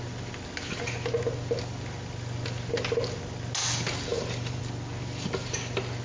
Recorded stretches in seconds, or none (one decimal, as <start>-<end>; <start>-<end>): 0.0-4.1; 4.6-6.0